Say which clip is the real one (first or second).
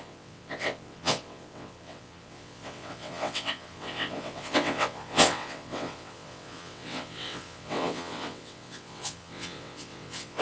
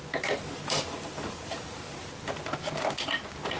second